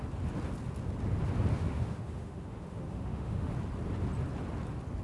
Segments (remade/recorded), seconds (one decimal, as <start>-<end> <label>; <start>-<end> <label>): 0.0-1.5 recorded; 1.5-3.5 remade; 3.5-5.0 recorded